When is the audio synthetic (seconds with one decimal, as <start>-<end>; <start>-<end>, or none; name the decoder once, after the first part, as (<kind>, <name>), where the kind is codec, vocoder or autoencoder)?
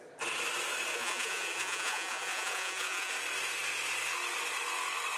0.9-3.1 (vocoder, Vocos)